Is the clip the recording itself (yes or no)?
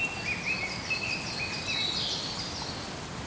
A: yes